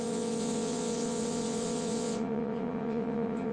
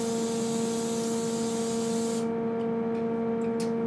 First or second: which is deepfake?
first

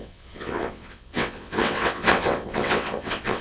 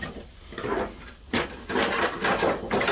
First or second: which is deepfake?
first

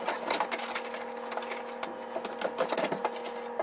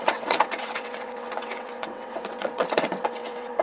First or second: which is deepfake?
second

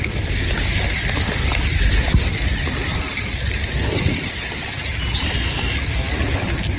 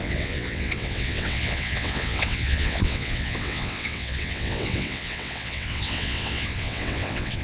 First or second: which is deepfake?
second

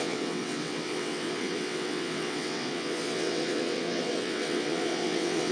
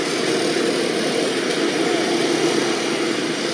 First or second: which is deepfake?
first